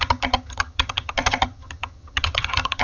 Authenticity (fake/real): fake